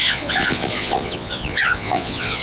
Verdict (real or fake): fake